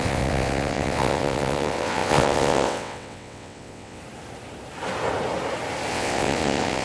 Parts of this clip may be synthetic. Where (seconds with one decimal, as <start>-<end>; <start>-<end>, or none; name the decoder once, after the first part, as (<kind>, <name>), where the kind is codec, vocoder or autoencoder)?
0.0-4.0 (vocoder, WaveNeXt); 5.9-6.8

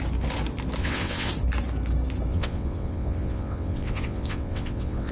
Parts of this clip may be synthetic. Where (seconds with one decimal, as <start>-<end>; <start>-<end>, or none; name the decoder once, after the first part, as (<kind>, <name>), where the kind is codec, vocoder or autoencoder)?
0.8-1.3 (vocoder, WaveNeXt); 2.3-5.1